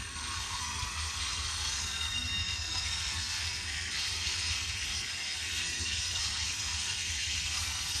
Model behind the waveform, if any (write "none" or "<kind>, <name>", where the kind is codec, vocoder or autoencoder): codec, SNAC